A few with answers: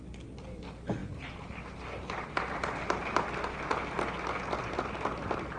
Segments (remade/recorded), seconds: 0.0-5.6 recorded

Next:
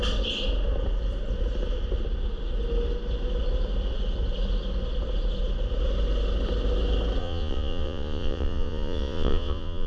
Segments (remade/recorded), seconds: 0.0-7.2 recorded; 7.2-9.9 remade

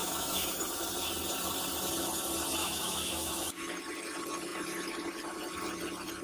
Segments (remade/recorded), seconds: 0.0-0.6 remade; 0.6-2.6 recorded; 2.6-3.7 remade; 3.7-6.2 recorded